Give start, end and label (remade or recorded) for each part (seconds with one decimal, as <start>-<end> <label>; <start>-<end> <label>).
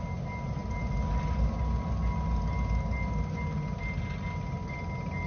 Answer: 0.0-5.3 recorded